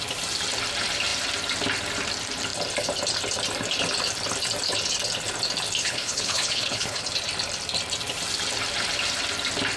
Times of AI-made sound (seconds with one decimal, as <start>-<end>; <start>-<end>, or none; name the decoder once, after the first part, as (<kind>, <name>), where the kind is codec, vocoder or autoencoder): 5.8-7.0 (codec, HILCodec)